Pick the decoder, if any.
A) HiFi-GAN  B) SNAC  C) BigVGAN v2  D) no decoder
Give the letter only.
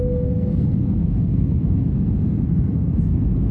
B